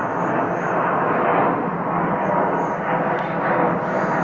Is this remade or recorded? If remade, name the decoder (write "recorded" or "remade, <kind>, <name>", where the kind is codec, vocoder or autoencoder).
recorded